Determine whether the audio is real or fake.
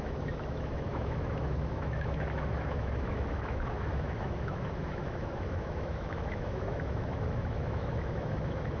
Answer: fake